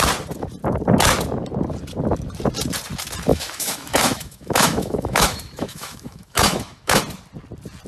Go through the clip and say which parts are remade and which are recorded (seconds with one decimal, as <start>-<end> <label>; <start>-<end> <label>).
0.0-3.3 recorded; 3.3-7.0 remade; 7.0-7.9 recorded